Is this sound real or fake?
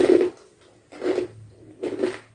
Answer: real